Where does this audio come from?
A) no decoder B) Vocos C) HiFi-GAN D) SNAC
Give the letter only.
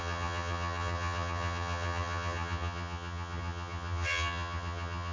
C